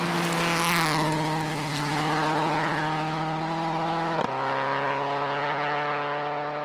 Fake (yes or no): no